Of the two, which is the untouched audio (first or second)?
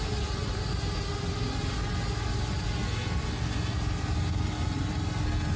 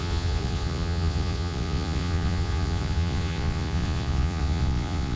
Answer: first